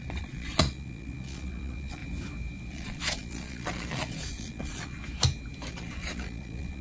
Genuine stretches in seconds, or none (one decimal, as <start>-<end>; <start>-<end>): 2.0-2.7; 5.0-5.7